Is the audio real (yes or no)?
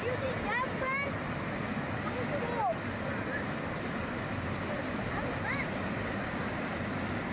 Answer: yes